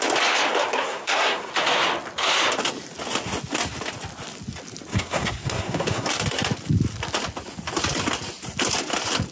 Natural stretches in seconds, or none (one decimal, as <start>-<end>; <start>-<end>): 0.0-0.7; 1.5-4.9; 6.1-9.3

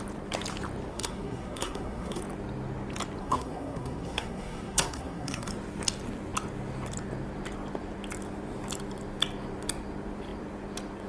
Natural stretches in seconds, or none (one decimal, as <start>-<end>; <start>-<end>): 0.0-0.9; 2.2-3.2; 5.5-11.1

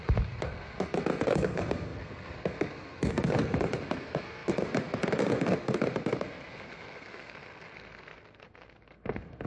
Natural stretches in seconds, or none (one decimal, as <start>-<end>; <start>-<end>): none

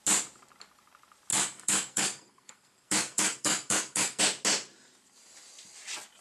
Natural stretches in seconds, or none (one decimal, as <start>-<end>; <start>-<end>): 0.0-1.3; 4.2-6.2

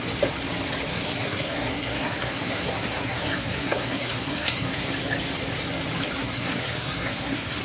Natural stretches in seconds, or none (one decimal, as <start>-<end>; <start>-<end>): 0.0-0.9; 4.9-6.2